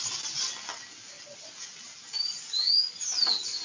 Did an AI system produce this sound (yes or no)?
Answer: no